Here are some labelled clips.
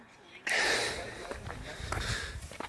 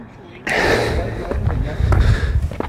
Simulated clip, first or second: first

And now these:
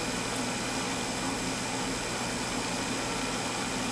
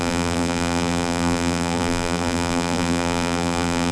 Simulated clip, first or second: second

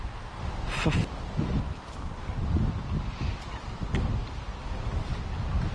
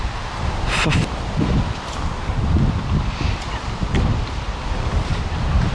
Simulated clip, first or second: second